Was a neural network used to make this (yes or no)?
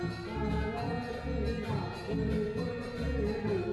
no